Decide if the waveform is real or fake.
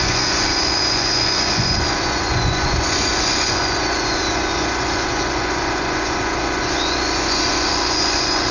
fake